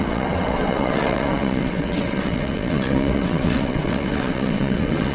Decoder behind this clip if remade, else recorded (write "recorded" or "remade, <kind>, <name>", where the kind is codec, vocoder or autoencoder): remade, vocoder, WaveNeXt